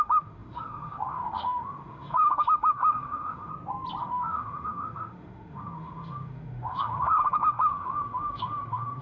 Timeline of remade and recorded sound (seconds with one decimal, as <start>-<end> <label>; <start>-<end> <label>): 0.0-3.5 remade; 3.5-4.0 recorded; 4.0-9.0 remade